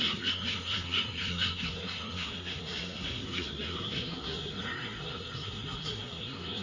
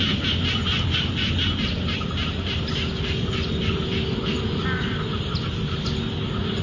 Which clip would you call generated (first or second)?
first